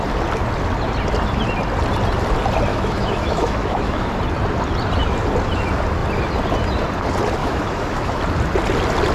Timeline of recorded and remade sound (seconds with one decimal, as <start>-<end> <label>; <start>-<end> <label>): 0.0-2.7 recorded; 2.7-4.1 remade; 4.1-7.4 recorded; 7.4-8.2 remade; 8.2-9.1 recorded